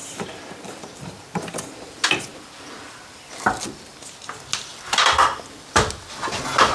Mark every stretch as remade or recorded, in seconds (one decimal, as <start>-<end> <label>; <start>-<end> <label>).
0.0-1.4 remade; 1.4-2.3 recorded; 2.3-3.9 remade; 3.9-4.7 recorded; 4.7-5.8 remade; 5.8-6.7 recorded